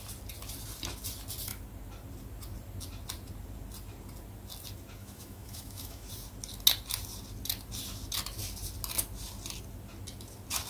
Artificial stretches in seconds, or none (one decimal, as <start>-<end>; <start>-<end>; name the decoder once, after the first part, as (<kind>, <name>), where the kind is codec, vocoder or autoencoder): 5.0-6.1 (autoencoder, DAC-VAE)